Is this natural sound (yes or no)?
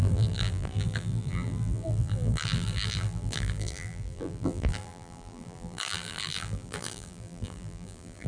no